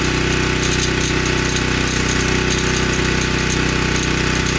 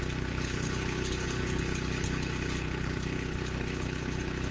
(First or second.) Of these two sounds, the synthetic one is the second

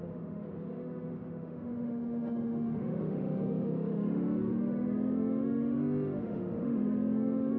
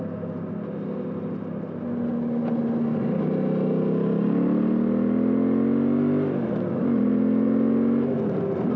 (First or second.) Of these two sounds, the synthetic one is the first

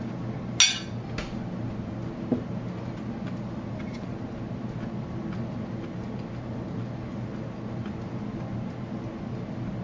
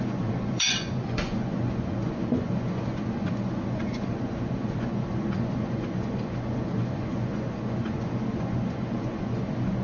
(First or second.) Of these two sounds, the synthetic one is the second